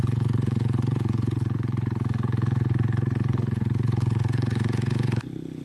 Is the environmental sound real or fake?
fake